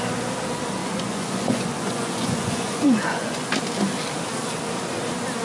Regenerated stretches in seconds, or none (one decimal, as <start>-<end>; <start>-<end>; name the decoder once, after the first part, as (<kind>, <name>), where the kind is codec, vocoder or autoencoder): 0.8-3.5 (vocoder, Vocos)